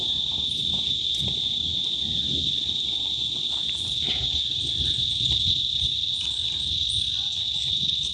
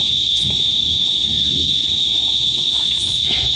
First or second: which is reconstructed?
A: second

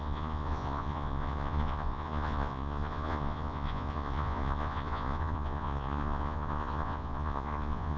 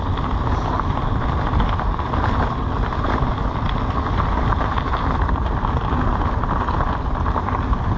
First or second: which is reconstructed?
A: first